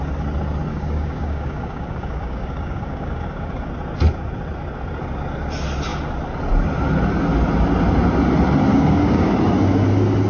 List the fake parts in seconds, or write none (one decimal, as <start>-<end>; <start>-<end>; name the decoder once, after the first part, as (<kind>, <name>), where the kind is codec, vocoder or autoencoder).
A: 0.7-3.7 (codec, DAC); 8.7-9.3